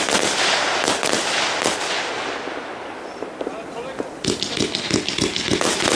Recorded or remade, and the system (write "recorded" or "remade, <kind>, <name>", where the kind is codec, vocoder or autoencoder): recorded